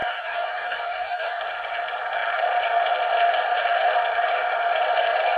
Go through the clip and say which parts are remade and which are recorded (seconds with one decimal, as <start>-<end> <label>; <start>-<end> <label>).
0.0-1.4 remade; 1.4-5.4 recorded